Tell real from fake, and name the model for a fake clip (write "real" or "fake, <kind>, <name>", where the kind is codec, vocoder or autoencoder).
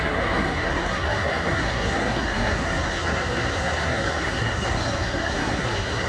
fake, codec, SNAC